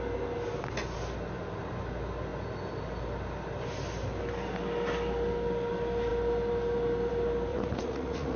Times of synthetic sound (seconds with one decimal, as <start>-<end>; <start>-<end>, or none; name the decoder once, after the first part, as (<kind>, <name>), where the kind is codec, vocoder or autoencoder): 7.5-8.4 (vocoder, Vocos)

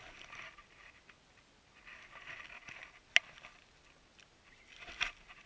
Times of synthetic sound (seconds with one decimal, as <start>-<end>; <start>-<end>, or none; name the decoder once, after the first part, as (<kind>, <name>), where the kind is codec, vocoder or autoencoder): none

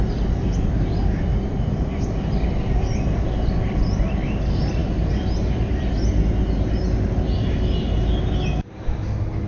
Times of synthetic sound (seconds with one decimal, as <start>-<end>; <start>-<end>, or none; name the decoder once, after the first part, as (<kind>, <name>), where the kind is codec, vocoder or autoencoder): none

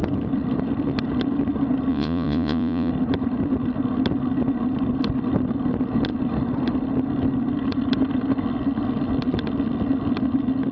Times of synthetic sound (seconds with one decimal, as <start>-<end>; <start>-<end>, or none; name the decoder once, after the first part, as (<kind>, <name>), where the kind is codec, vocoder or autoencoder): 1.9-2.9 (vocoder, Vocos)

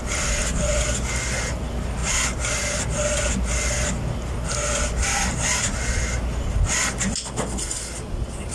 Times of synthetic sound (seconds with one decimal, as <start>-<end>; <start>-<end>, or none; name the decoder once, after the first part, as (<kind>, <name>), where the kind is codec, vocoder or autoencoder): none